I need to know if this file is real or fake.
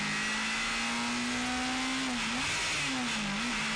real